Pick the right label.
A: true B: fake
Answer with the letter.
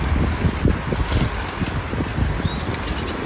A